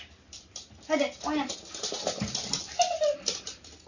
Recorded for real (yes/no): yes